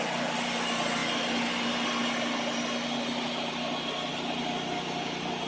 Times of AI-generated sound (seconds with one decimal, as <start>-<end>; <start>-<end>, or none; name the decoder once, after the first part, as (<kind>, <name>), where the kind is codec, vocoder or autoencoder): none